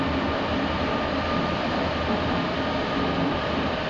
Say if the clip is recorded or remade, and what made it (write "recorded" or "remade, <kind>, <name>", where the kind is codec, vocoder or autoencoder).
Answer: recorded